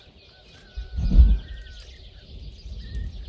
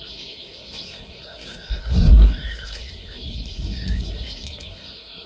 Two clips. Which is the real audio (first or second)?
first